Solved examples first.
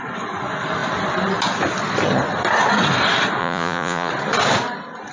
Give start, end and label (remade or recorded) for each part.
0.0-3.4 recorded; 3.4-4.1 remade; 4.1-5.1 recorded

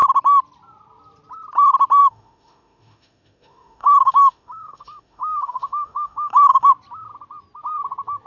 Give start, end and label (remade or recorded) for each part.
0.0-2.0 recorded; 2.0-6.7 remade; 6.7-8.3 recorded

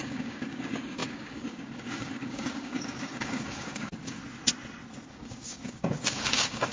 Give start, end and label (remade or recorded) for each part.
0.0-4.2 remade; 4.2-5.1 recorded; 5.1-6.7 remade

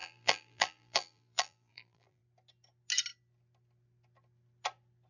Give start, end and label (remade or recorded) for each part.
0.0-2.2 remade; 2.2-5.1 recorded